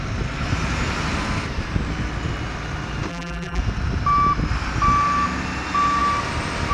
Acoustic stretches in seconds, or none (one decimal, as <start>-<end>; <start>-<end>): 0.0-3.1; 3.6-6.7